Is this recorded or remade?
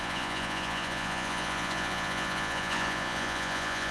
remade